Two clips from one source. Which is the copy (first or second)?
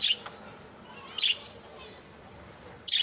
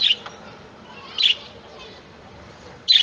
second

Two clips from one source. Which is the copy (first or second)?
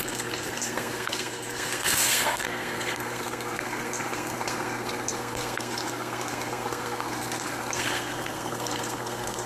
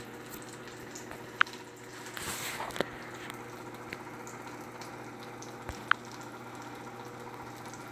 first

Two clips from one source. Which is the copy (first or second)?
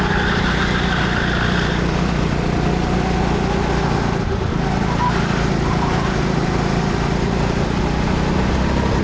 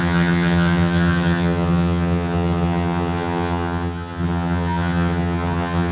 second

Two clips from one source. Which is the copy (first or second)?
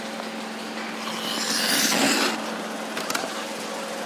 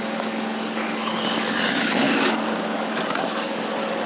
second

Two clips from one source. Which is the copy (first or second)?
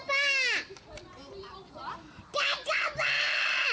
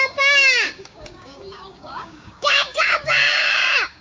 second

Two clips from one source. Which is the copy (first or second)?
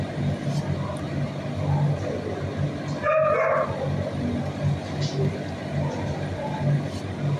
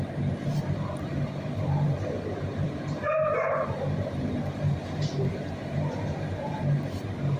second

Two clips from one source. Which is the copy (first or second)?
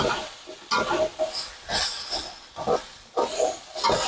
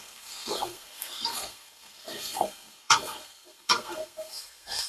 second